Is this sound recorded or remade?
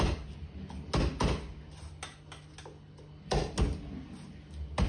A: recorded